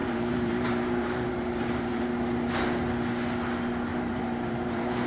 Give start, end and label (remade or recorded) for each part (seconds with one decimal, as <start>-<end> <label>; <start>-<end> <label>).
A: 0.0-2.0 remade; 2.0-3.9 recorded; 3.9-5.1 remade